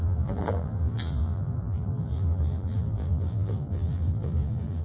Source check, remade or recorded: remade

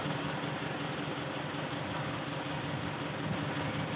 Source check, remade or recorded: recorded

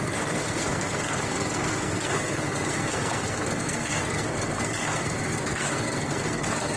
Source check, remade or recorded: remade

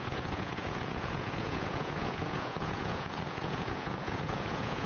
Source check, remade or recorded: remade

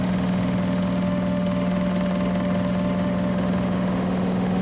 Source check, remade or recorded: remade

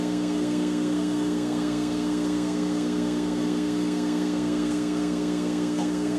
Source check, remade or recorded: remade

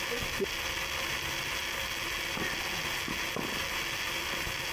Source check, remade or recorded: recorded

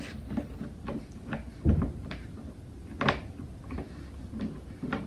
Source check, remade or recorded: recorded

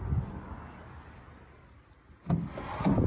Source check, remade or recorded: recorded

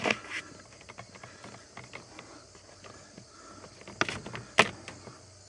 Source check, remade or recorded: recorded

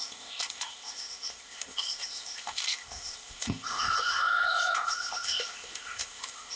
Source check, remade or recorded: remade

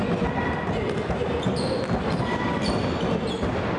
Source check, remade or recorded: recorded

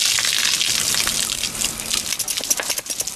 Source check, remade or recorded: recorded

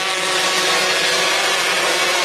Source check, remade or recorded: recorded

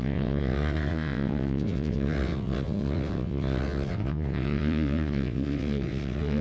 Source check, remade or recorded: remade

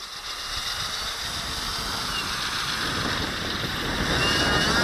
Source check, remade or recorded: recorded